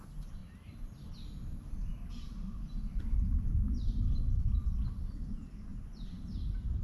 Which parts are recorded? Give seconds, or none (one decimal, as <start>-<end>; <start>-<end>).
0.0-0.4; 1.0-1.5; 4.4-6.8

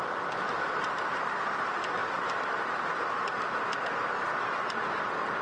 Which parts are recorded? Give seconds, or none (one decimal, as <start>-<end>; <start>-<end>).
0.0-5.4

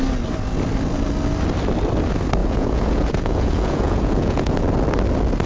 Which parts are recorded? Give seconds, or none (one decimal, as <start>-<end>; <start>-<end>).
0.0-2.4; 4.5-5.5

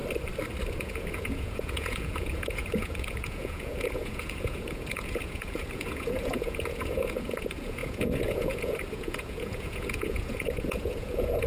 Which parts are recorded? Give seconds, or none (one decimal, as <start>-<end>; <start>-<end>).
0.0-0.7

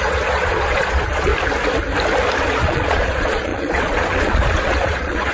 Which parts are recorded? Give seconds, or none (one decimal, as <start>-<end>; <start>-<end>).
1.3-2.4

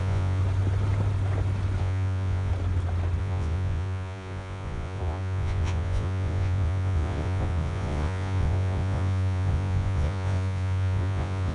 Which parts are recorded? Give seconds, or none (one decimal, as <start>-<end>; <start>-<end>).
0.4-1.8; 2.5-3.2